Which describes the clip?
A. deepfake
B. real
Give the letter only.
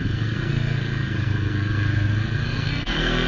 A